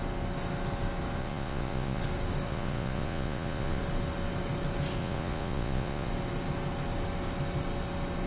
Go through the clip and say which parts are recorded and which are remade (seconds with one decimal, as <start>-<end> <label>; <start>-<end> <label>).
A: 0.0-1.2 recorded; 1.2-2.0 remade; 2.0-2.5 recorded; 2.5-3.8 remade; 3.8-5.0 recorded; 5.0-6.1 remade; 6.1-8.3 recorded